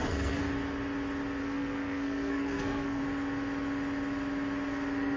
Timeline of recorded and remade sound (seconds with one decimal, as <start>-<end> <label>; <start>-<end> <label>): 0.0-0.4 remade; 0.4-1.4 recorded; 1.4-3.0 remade; 3.0-5.2 recorded